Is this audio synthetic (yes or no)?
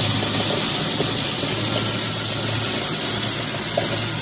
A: no